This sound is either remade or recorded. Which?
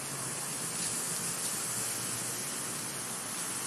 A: recorded